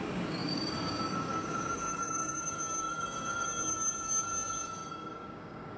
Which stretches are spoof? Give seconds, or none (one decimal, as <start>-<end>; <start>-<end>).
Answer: 0.0-5.8